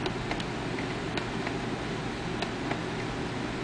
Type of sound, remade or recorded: recorded